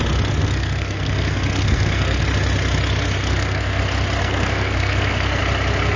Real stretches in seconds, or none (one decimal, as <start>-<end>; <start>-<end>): 0.0-0.4; 2.2-3.2; 3.8-4.2; 5.4-6.0